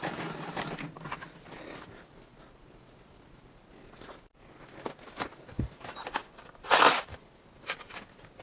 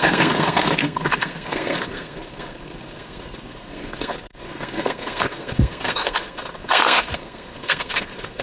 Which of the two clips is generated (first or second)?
second